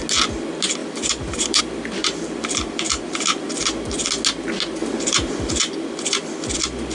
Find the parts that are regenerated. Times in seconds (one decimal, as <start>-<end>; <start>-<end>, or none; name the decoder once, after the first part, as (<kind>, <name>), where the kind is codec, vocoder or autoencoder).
0.8-1.6 (vocoder, BigVGAN v2); 2.0-3.6; 4.8-5.6